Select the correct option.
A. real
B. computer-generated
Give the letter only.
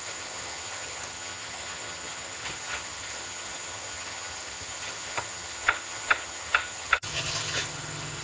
B